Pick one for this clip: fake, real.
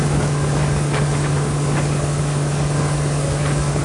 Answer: fake